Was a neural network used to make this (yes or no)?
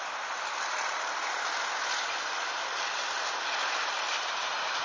yes